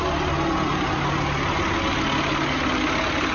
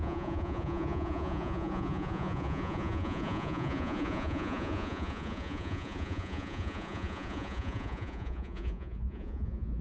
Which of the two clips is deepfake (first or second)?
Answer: second